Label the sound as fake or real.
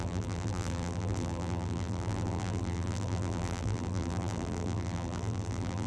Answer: fake